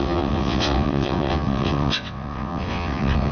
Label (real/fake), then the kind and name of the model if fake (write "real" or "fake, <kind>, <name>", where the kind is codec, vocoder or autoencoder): fake, vocoder, WaveNeXt